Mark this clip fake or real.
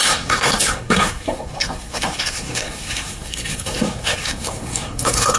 fake